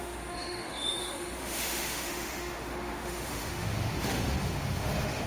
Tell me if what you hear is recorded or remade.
remade